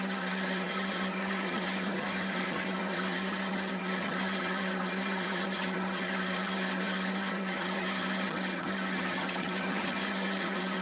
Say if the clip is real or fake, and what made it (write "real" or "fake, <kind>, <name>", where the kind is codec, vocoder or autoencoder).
fake, vocoder, HiFi-GAN